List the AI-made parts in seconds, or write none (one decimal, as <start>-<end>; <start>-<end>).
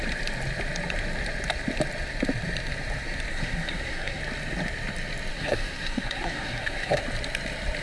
3.3-4.2; 5.3-7.0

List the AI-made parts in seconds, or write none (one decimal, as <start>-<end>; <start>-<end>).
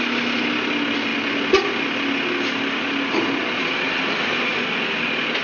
none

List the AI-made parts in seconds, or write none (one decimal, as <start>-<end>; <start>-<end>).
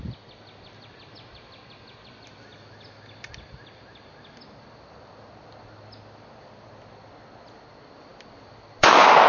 none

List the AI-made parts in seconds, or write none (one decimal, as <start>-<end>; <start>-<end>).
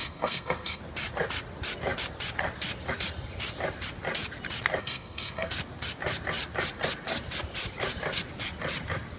0.0-0.8; 4.8-5.5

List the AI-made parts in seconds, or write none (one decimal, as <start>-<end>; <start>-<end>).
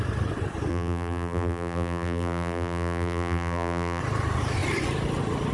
0.7-4.0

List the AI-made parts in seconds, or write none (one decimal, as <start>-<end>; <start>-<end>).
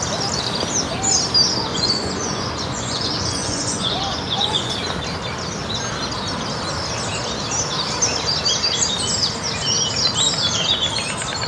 1.7-4.7